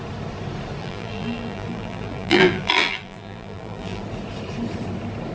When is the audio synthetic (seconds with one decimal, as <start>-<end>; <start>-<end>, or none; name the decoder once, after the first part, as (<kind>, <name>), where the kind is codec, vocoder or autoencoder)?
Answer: 0.8-4.0 (vocoder, BigVGAN v2)

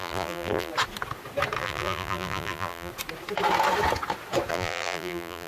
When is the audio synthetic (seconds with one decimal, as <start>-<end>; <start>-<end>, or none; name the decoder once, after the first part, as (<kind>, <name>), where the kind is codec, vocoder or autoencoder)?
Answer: 0.0-0.7 (vocoder, BigVGAN v2); 1.6-2.9; 4.5-5.5

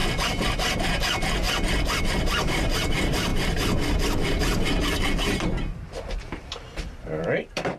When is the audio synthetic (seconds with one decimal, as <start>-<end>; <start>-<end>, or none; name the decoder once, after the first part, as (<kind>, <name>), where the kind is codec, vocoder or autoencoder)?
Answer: 2.0-3.3 (vocoder, BigVGAN v2); 5.0-7.8

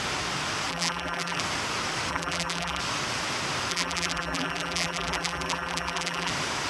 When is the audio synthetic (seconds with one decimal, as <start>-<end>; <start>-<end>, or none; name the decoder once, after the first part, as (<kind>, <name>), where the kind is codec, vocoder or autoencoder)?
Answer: 0.7-1.4 (vocoder, BigVGAN v2); 2.1-2.8; 3.7-6.3

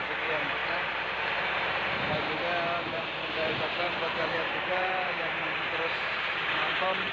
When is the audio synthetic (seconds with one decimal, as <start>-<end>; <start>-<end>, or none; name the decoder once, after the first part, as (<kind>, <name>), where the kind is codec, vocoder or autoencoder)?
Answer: 0.0-7.1 (vocoder, BigVGAN v2)